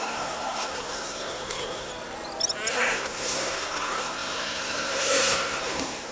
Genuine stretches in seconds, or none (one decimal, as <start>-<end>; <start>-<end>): 1.9-2.7